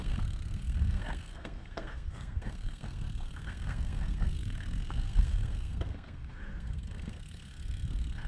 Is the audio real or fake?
fake